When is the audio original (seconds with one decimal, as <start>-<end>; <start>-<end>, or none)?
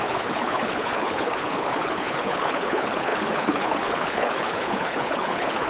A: none